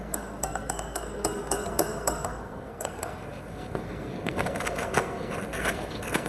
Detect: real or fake fake